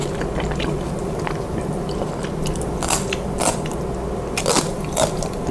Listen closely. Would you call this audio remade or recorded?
recorded